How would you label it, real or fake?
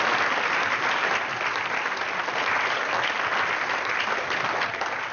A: real